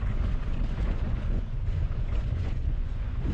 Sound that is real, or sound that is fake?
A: fake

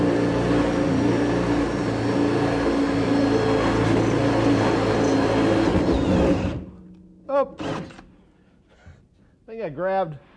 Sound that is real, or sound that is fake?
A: real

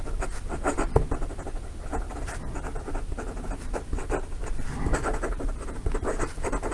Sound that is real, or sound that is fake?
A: real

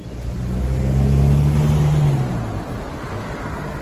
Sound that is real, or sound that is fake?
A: real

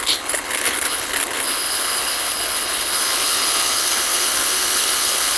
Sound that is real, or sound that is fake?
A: fake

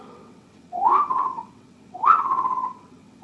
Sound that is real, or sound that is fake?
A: fake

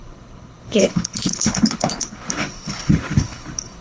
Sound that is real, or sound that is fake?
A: fake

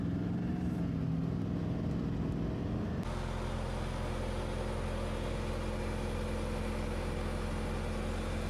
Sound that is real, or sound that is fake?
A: real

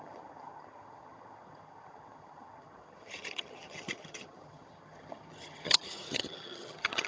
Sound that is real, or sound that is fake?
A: fake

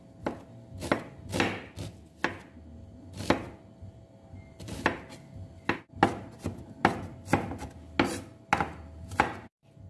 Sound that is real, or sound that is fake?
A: real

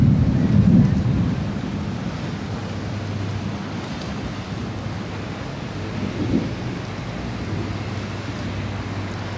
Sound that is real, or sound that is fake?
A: real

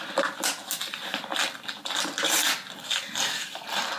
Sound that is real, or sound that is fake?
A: real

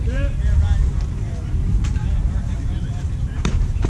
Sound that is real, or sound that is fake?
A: fake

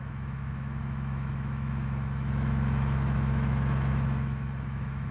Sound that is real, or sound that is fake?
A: fake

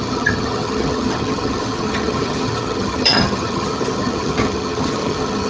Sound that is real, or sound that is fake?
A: fake